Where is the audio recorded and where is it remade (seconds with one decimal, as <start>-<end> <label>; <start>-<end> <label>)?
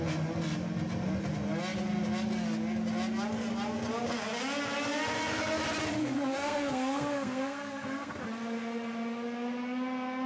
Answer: 0.0-6.0 recorded; 6.0-8.2 remade; 8.2-10.3 recorded